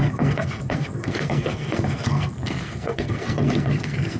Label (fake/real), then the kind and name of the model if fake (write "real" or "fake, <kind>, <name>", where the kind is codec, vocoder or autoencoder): fake, codec, SNAC